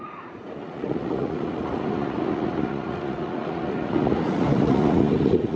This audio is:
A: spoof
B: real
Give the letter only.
A